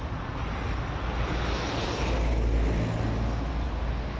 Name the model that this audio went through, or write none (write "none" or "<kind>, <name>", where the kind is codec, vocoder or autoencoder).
none